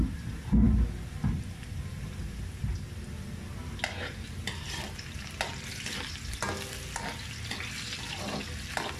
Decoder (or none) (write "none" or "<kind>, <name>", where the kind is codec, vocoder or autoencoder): none